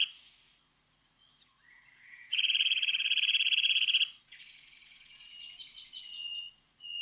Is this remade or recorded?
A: remade